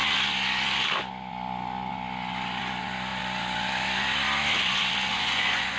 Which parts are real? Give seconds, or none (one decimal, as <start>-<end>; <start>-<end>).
0.0-5.1